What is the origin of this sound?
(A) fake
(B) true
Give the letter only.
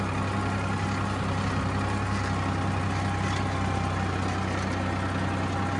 B